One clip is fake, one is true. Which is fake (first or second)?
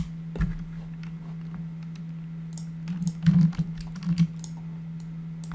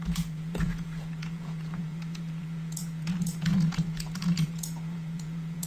second